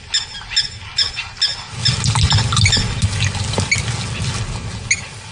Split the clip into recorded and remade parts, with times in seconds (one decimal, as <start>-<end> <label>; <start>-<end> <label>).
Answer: 0.0-5.3 recorded